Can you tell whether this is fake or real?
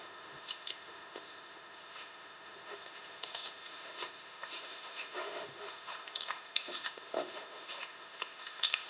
fake